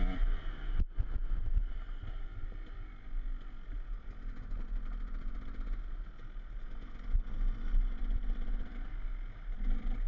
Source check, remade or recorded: recorded